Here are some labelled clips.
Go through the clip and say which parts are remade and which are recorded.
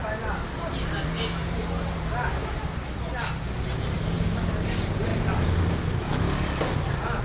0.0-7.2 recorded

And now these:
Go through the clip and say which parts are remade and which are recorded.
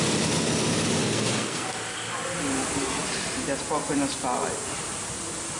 0.0-1.0 recorded; 1.0-1.7 remade; 1.7-5.6 recorded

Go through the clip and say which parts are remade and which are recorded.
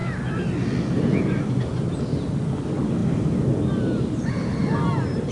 0.0-5.3 recorded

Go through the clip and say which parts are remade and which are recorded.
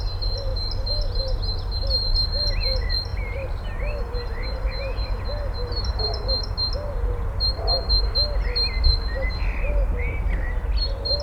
0.0-11.2 recorded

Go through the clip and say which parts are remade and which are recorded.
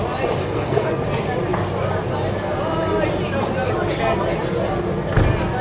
0.0-0.4 recorded; 0.4-0.9 remade; 0.9-5.6 recorded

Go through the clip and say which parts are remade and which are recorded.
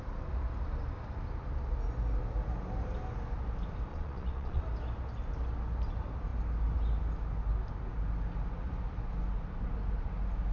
0.0-3.9 recorded; 3.9-4.6 remade; 4.6-10.5 recorded